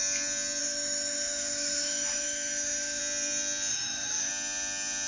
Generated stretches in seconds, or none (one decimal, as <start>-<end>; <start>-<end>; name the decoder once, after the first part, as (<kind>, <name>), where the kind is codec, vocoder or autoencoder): 0.6-3.0 (autoencoder, DAC-VAE); 3.7-4.3